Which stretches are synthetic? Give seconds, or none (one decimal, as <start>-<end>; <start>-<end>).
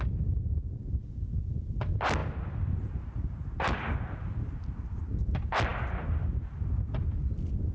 none